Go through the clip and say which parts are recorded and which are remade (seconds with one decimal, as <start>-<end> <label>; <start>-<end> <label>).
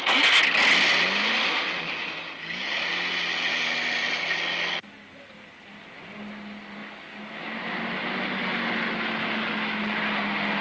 0.0-10.6 recorded